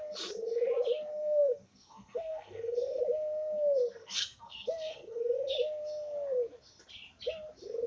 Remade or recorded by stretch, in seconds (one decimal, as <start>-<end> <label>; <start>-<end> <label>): 0.0-1.1 recorded; 1.1-3.0 remade; 3.0-4.0 recorded; 4.0-5.5 remade; 5.5-7.9 recorded